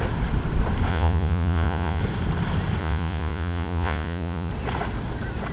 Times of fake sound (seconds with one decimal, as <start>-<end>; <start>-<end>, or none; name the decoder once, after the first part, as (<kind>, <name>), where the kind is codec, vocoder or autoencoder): 0.9-2.0 (vocoder, Vocos); 2.8-4.5